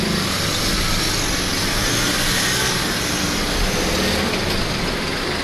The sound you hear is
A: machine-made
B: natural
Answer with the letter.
B